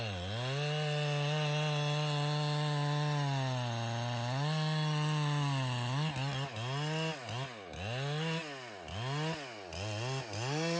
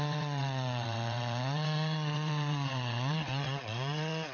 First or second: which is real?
first